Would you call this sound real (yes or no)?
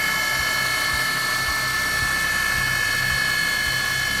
yes